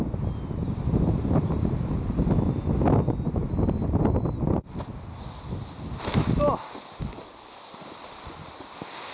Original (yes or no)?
yes